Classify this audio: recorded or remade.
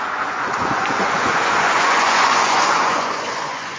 remade